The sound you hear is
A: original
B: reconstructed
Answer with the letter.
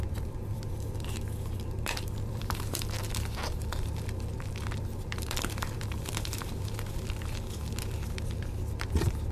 B